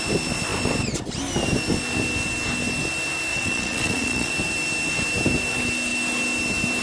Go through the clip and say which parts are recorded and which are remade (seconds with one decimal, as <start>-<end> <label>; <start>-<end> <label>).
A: 0.0-3.3 recorded; 3.3-4.3 remade; 4.3-6.8 recorded